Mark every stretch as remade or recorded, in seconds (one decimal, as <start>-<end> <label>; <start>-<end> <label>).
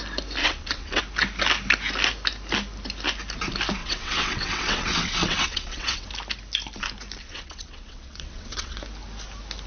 0.0-0.4 recorded; 0.4-1.0 remade; 1.0-3.8 recorded; 3.8-6.1 remade; 6.1-7.2 recorded; 7.2-8.8 remade; 8.8-9.7 recorded